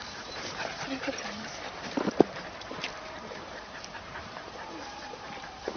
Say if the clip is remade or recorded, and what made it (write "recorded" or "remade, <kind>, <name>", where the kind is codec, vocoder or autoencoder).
remade, vocoder, BigVGAN v2